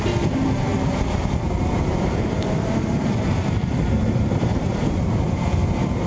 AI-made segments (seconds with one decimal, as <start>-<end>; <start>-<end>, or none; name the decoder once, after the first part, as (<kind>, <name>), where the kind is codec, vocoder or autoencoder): 0.0-6.1 (vocoder, BigVGAN v2)